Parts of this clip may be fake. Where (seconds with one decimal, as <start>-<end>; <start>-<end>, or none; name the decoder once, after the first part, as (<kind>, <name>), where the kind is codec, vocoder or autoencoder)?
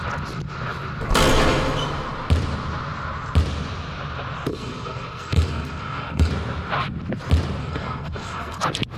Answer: 4.5-6.3 (codec, SNAC); 7.6-8.6